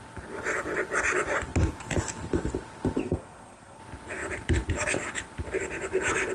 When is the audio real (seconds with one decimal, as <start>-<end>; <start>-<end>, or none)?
0.0-3.0; 3.8-6.3